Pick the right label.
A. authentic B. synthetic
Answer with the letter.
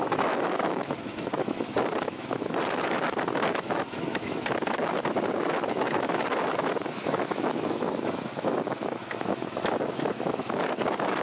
B